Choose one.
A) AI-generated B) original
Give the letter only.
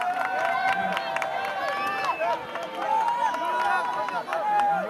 B